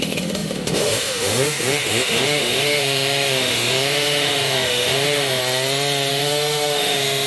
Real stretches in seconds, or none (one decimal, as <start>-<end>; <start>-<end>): 5.4-6.1